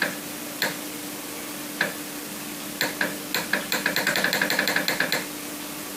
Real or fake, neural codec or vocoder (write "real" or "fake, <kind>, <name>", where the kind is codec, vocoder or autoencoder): real